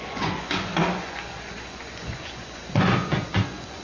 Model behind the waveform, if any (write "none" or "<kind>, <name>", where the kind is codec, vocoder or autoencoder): vocoder, Vocos